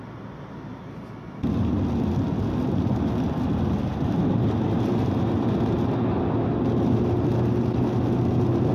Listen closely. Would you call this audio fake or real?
real